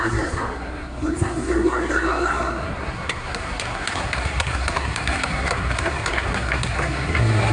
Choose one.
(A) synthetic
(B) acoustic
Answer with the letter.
A